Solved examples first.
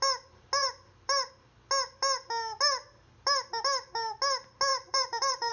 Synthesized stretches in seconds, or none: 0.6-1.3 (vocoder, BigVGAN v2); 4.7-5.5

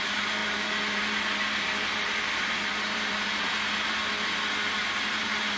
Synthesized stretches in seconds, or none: 0.0-4.0 (vocoder, BigVGAN v2); 4.8-5.6

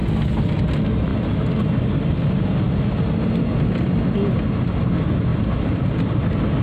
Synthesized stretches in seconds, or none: 5.3-6.6 (vocoder, BigVGAN v2)

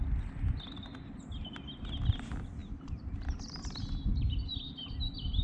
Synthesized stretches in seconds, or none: 2.6-3.8 (vocoder, BigVGAN v2)

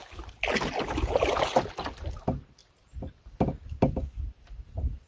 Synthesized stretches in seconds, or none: none